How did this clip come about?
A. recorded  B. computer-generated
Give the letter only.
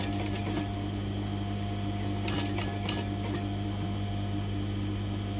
A